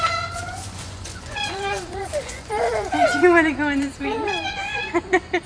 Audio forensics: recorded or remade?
remade